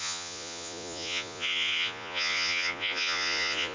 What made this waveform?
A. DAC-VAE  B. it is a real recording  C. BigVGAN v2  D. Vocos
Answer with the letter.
D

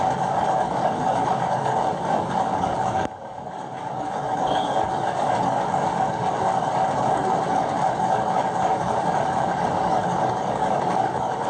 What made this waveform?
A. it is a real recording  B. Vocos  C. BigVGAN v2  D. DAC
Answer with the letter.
D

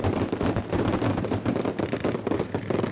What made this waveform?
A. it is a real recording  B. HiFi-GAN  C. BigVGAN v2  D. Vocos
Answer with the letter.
C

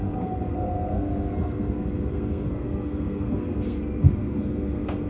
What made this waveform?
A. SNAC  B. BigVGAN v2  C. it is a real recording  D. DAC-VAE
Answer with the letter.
A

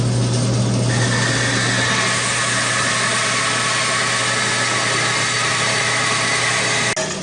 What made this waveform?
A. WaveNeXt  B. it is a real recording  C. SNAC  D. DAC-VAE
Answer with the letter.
B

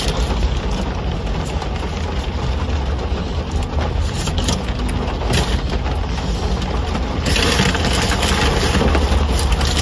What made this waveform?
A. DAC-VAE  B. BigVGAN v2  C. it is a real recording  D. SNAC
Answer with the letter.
C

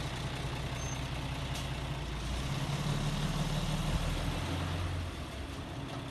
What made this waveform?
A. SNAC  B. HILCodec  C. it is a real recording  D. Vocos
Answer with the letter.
C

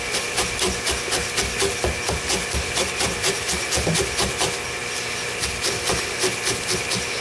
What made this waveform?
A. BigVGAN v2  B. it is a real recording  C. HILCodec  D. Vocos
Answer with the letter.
B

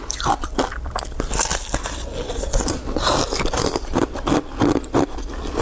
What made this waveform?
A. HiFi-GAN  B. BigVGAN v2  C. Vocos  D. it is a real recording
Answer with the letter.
D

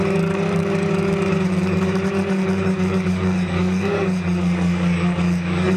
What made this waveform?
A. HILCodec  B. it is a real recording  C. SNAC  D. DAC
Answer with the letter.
D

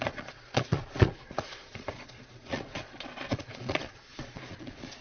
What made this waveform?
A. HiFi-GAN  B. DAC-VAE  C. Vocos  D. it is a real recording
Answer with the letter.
C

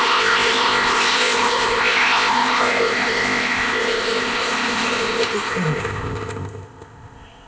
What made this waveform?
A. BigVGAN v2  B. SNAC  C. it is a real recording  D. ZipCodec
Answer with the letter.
D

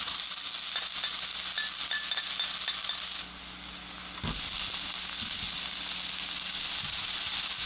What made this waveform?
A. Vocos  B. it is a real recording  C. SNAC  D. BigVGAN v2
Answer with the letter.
B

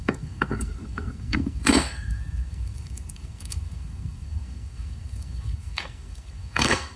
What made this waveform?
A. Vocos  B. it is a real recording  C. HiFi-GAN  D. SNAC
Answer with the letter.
D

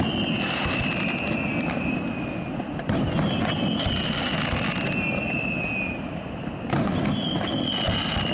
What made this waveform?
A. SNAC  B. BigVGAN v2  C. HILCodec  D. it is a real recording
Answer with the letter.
D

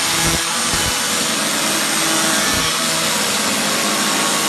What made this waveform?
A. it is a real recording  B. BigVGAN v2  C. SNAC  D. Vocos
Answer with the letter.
A